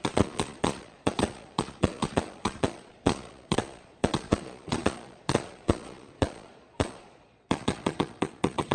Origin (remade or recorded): remade